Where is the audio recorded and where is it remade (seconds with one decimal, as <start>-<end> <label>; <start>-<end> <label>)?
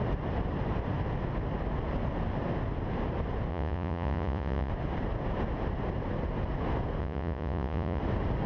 0.0-3.5 recorded; 3.5-4.7 remade; 4.7-7.0 recorded; 7.0-8.0 remade; 8.0-8.5 recorded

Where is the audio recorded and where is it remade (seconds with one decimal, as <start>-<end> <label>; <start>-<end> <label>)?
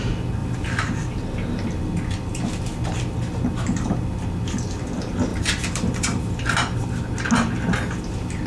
0.0-0.4 recorded; 0.4-1.7 remade; 1.7-5.3 recorded; 5.3-7.0 remade; 7.0-8.5 recorded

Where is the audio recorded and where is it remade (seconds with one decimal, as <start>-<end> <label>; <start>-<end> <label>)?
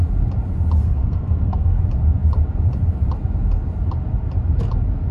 0.0-0.8 recorded; 0.8-1.8 remade; 1.8-5.1 recorded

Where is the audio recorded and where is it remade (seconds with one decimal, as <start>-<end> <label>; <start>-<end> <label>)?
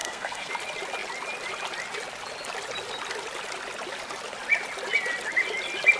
0.0-0.5 remade; 0.5-6.0 recorded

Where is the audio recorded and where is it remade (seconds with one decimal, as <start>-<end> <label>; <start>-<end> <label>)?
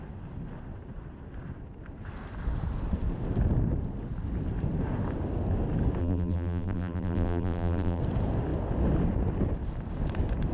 0.0-6.0 recorded; 6.0-8.0 remade; 8.0-10.5 recorded